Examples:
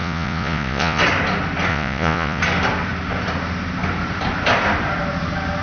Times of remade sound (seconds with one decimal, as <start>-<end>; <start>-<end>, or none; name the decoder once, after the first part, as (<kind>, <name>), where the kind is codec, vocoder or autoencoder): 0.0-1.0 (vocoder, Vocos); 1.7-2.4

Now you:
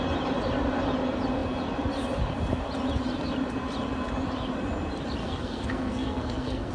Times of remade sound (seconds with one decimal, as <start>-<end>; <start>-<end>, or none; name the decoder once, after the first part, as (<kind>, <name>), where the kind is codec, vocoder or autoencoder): 5.2-6.7 (codec, SNAC)

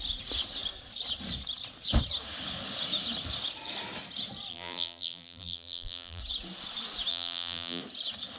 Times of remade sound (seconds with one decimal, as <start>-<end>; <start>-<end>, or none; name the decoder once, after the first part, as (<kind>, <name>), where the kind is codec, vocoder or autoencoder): 4.5-6.2 (vocoder, BigVGAN v2); 7.1-7.8

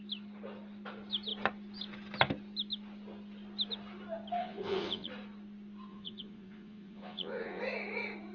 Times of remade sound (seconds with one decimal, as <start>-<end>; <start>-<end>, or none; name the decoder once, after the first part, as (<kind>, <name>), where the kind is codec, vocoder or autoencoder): 4.4-5.1 (vocoder, Vocos); 5.9-7.6